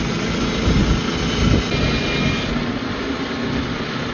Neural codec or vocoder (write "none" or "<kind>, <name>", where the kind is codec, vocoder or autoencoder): none